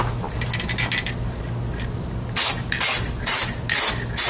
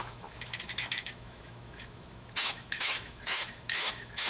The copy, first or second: second